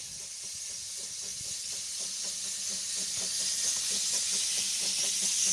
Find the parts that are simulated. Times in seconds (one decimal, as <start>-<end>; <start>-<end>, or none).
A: none